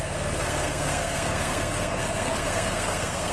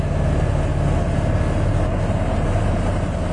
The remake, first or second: first